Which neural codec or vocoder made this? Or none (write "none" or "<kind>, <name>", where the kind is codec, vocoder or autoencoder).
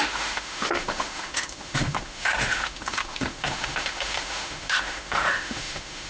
autoencoder, DAC-VAE